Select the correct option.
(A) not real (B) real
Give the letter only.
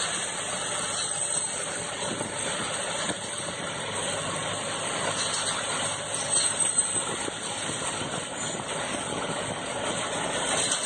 B